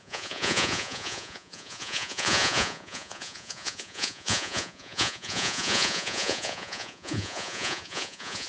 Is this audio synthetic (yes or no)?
yes